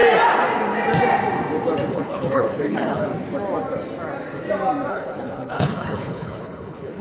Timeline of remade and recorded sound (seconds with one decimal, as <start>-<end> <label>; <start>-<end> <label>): 0.0-1.9 recorded; 1.9-3.1 remade; 3.1-4.9 recorded; 4.9-7.0 remade